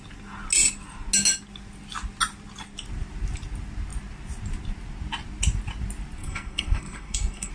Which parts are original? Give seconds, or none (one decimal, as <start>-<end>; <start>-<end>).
0.0-6.2

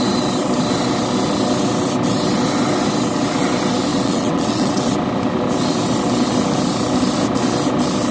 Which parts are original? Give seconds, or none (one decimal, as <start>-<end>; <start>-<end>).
0.0-3.9; 4.9-8.1

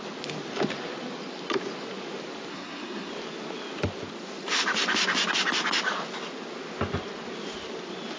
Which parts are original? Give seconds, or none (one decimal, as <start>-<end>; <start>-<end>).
0.0-2.5; 3.1-8.2

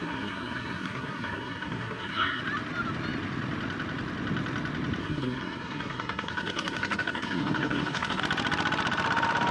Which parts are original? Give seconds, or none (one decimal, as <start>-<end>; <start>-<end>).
2.4-5.0; 8.2-9.5

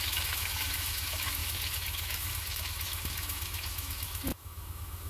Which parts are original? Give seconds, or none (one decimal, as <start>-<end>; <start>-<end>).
none

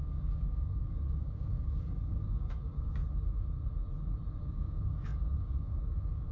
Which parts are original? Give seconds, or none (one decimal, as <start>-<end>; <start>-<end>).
3.0-4.4

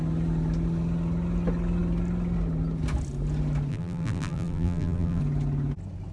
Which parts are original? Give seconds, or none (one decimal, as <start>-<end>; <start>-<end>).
0.0-3.7; 5.2-6.1